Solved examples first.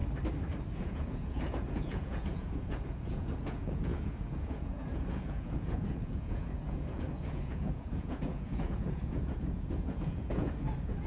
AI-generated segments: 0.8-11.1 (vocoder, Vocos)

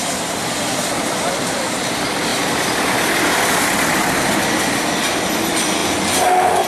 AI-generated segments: 0.0-0.9 (vocoder, BigVGAN v2); 2.3-3.3